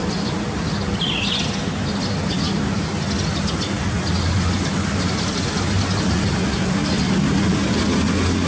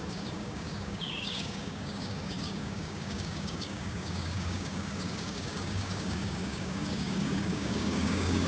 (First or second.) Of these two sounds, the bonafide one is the first